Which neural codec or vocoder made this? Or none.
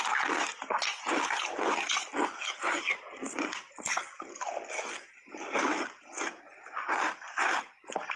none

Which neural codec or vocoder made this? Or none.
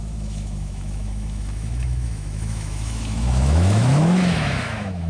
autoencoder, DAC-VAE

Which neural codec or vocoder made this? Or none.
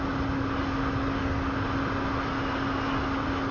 none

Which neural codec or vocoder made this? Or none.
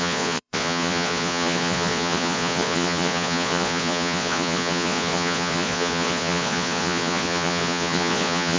vocoder, Vocos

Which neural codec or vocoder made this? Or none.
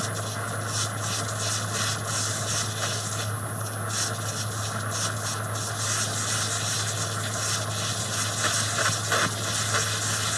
none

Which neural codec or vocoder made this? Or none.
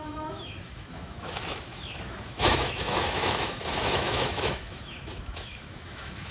autoencoder, DAC-VAE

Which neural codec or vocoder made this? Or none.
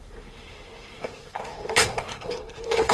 codec, SNAC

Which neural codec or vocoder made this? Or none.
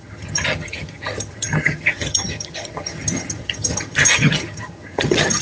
vocoder, HiFi-GAN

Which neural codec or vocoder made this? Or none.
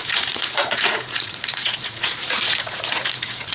vocoder, Vocos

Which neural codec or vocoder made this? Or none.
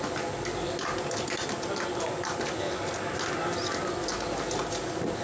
none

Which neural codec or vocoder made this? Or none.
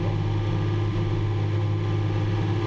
none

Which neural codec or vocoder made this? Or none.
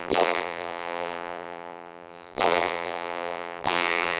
vocoder, BigVGAN v2